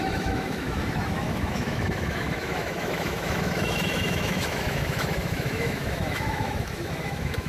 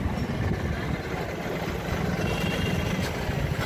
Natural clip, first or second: second